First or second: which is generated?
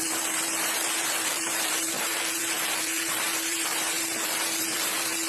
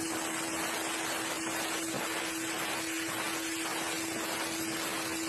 first